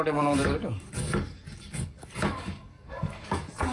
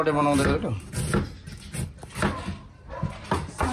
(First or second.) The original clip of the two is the second